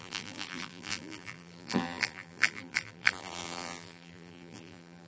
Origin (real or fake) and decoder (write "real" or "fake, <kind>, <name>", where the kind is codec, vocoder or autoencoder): fake, vocoder, BigVGAN v2